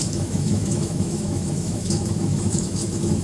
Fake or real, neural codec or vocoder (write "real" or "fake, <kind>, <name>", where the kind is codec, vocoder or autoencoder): fake, autoencoder, DAC-VAE